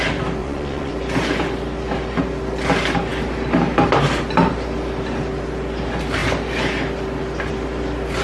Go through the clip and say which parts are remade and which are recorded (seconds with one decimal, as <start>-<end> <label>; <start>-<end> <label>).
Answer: 0.0-0.4 recorded; 0.4-0.9 remade; 0.9-8.2 recorded